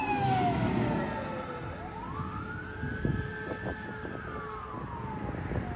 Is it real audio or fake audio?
real